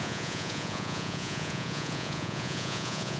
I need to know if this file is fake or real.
fake